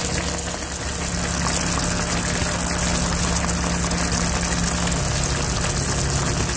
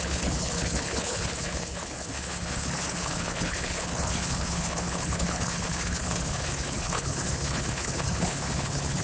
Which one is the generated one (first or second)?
second